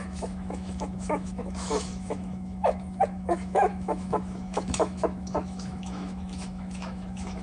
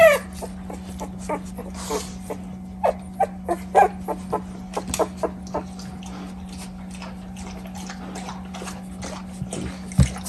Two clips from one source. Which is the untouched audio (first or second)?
second